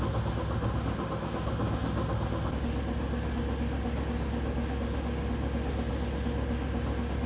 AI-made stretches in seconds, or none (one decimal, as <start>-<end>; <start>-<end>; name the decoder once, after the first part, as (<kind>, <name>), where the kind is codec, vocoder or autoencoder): none